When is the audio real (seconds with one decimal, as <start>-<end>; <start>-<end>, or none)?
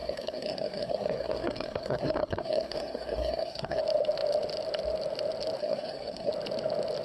3.8-5.6; 6.3-7.0